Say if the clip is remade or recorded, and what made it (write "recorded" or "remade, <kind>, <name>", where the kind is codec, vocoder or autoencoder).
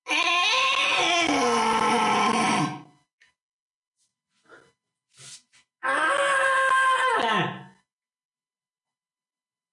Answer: recorded